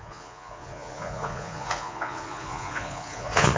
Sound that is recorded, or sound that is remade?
remade